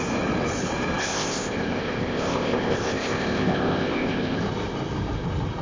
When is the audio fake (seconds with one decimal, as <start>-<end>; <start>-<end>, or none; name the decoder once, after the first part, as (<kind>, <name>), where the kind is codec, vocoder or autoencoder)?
1.0-4.4 (codec, ZipCodec)